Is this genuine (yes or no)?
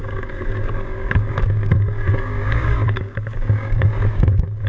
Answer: no